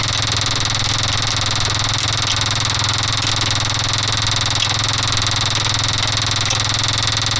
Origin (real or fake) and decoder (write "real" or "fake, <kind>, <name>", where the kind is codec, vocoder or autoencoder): real